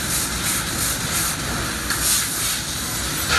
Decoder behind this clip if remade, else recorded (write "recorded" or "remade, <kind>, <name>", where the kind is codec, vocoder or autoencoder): recorded